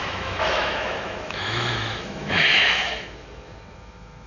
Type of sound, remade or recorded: remade